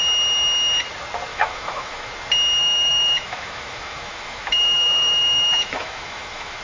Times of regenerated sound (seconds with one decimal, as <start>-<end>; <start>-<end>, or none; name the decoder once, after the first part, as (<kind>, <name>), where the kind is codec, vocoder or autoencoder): 1.3-2.1 (autoencoder, DAC-VAE); 2.6-6.6